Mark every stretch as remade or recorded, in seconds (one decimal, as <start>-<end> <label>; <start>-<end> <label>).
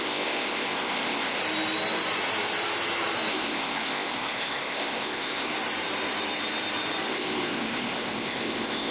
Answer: 0.0-1.4 remade; 1.4-3.3 recorded; 3.3-5.5 remade; 5.5-7.1 recorded; 7.1-8.9 remade